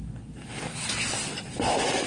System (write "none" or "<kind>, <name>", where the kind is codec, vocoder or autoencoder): none